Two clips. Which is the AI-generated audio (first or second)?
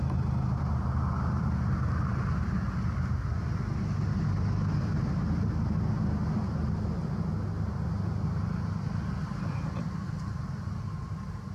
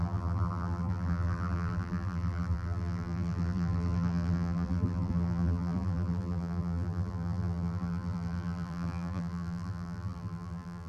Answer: second